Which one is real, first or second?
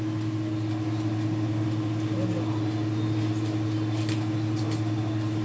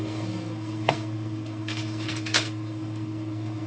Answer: first